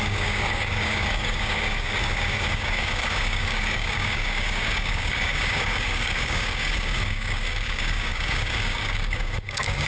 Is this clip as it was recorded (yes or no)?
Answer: no